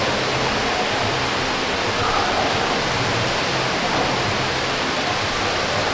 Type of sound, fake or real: real